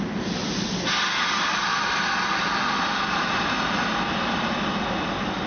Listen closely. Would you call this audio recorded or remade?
recorded